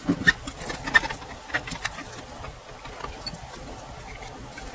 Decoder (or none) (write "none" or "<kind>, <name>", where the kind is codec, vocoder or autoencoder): none